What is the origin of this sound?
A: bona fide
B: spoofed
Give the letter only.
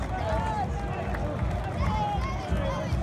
A